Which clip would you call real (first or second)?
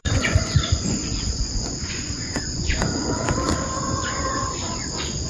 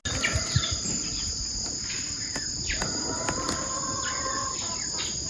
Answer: second